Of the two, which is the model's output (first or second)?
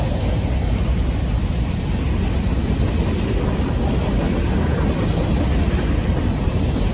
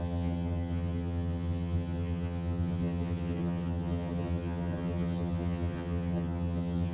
second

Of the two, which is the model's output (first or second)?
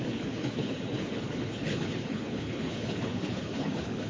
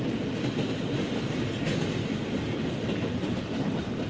first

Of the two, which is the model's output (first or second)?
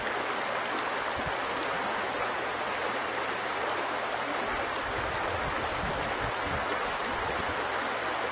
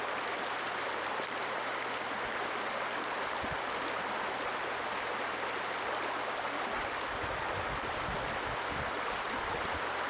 first